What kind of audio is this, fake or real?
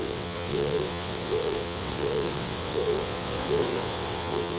fake